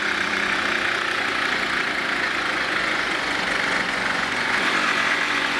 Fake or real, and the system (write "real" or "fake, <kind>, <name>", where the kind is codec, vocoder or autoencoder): fake, vocoder, Vocos